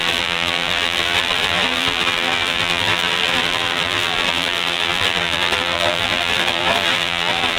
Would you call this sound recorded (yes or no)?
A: no